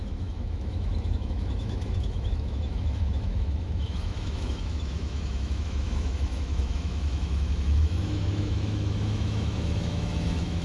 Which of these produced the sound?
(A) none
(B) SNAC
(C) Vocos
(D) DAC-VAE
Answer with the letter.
D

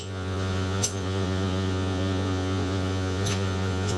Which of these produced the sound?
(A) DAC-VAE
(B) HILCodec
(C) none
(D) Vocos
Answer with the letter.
D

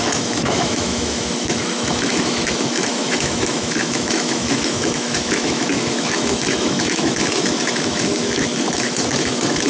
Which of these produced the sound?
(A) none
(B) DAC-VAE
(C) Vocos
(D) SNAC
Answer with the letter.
B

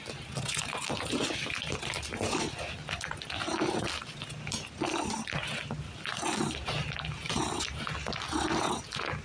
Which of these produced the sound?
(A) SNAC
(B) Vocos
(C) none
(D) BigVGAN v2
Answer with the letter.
C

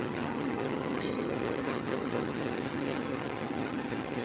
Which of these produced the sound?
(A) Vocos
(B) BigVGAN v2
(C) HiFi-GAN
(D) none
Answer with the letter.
C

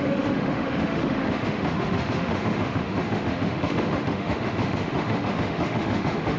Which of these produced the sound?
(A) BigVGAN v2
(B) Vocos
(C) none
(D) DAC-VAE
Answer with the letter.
D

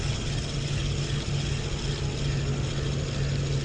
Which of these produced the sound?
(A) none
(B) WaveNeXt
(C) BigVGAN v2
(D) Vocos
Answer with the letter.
A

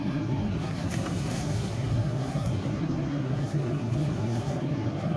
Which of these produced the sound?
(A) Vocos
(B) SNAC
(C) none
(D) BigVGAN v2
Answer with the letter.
B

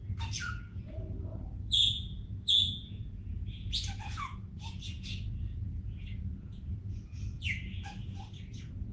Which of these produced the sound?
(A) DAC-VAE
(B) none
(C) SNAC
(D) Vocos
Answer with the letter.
D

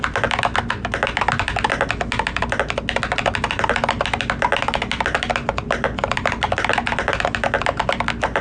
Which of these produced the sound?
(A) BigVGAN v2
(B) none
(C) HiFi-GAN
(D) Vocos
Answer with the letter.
B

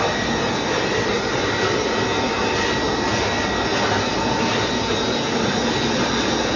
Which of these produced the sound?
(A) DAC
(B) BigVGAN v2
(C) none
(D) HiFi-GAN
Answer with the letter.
C